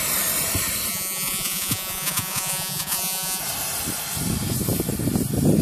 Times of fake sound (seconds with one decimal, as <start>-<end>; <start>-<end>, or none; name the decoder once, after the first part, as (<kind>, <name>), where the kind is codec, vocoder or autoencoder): 0.9-3.4 (vocoder, Vocos)